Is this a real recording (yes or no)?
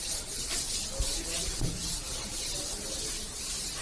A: yes